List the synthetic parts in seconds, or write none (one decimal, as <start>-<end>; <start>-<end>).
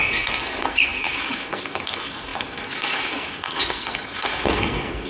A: 0.0-5.1